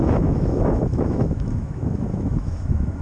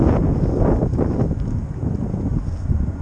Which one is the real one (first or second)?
second